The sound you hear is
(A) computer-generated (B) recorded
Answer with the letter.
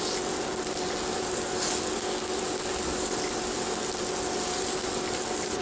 B